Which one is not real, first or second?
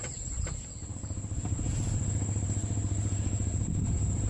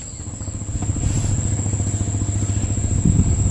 first